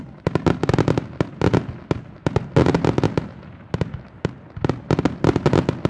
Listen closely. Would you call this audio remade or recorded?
recorded